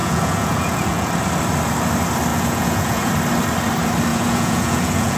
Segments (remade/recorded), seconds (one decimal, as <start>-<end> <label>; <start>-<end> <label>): 0.0-1.1 remade; 1.1-2.3 recorded; 2.3-3.1 remade; 3.1-4.1 recorded; 4.1-5.2 remade